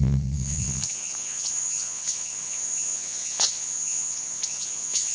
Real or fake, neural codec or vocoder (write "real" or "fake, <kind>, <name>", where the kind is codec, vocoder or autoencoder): fake, vocoder, Vocos